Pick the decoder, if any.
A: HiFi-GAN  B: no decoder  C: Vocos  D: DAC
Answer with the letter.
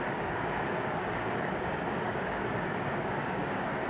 D